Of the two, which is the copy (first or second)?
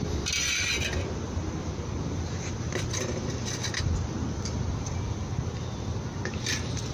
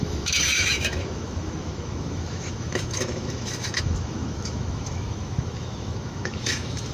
second